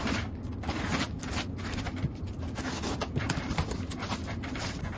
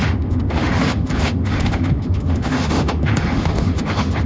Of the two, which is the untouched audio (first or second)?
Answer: first